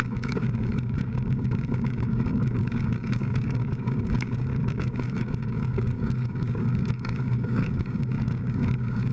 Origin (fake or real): fake